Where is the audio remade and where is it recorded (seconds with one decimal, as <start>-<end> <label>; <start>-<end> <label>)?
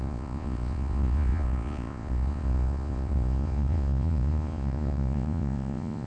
0.0-6.1 remade